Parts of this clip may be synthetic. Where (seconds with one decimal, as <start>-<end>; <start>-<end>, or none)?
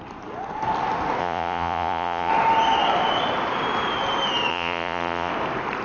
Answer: 1.2-2.3; 4.5-5.3